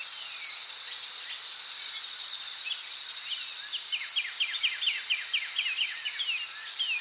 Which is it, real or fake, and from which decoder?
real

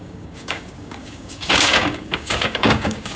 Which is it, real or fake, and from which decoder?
fake, codec, DAC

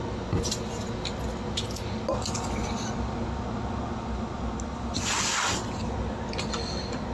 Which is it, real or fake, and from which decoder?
real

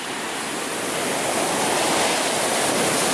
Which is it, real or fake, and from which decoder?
real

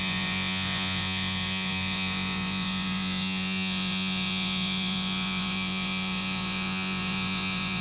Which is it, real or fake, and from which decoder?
fake, vocoder, Vocos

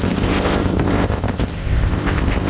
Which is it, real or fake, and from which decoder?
fake, codec, ZipCodec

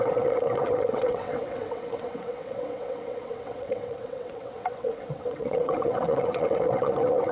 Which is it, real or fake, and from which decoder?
fake, vocoder, WaveNeXt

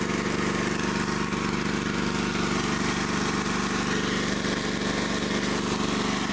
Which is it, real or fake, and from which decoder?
real